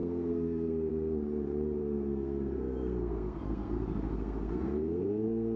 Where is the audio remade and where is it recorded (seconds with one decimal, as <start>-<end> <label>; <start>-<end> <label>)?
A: 0.0-0.9 remade; 0.9-1.8 recorded; 1.8-5.6 remade